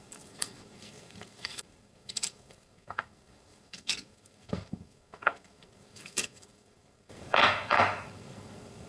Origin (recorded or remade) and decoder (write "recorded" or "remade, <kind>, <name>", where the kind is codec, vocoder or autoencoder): remade, codec, SNAC